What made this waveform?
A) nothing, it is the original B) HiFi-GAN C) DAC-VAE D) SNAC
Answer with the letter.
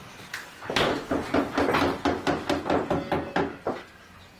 A